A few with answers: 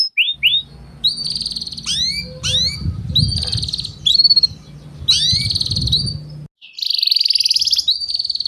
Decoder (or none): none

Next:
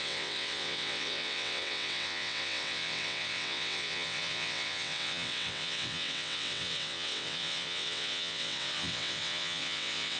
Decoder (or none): vocoder, WaveNeXt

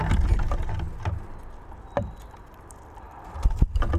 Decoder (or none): none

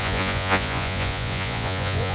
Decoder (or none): vocoder, Vocos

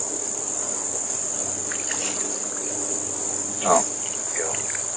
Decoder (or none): none